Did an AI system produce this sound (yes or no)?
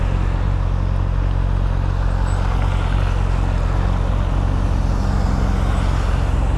no